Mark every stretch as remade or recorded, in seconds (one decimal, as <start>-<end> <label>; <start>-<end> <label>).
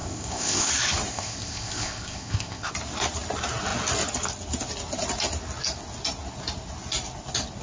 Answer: 0.0-0.7 remade; 0.7-1.1 recorded; 1.1-2.7 remade; 2.7-7.6 recorded